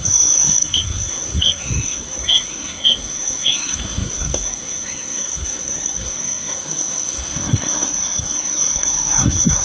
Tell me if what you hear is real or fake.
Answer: fake